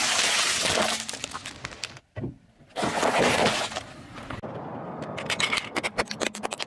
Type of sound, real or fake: real